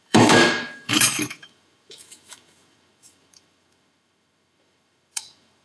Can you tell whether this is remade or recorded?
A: remade